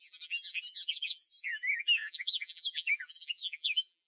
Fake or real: fake